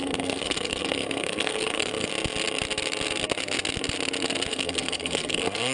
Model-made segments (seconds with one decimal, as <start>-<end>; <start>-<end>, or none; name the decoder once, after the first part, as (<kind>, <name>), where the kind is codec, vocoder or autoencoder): 0.0-2.1 (codec, SNAC); 4.5-5.7